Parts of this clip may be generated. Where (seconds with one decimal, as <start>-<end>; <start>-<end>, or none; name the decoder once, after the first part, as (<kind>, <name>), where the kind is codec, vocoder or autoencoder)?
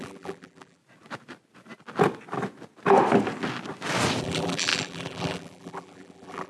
0.0-0.8 (vocoder, BigVGAN v2); 4.2-6.5